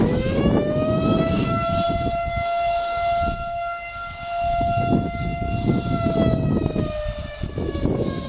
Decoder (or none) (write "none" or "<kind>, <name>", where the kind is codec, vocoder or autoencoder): autoencoder, DAC-VAE